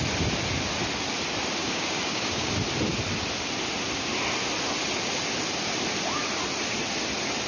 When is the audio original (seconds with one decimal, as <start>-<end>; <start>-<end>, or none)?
0.0-1.6; 2.5-7.5